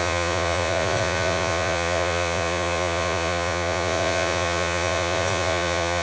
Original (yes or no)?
no